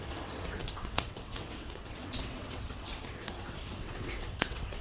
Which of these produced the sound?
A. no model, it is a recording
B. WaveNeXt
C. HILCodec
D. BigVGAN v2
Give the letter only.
B